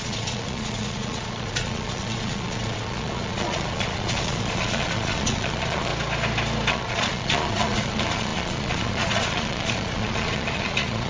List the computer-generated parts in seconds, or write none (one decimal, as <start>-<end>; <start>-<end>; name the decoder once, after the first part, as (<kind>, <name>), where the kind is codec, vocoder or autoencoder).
0.0-5.9 (vocoder, Vocos); 6.7-11.1